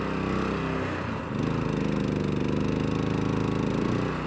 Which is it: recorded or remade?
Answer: recorded